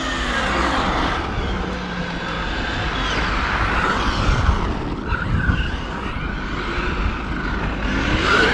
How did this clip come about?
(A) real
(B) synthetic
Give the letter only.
A